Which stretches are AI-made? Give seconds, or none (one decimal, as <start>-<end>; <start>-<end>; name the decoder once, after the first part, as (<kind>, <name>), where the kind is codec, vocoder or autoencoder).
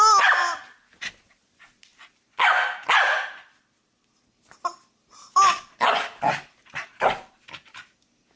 1.9-6.9 (vocoder, BigVGAN v2)